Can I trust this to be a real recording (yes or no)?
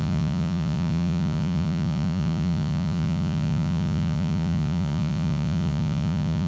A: no